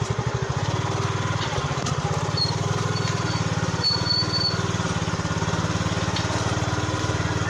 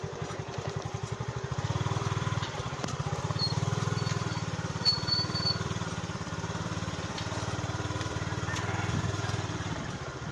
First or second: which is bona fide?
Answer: first